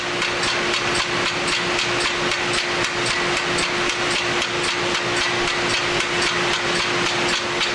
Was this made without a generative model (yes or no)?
yes